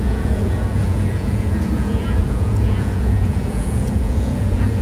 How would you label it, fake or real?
fake